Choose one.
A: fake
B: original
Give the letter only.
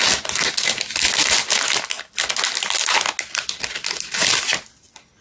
B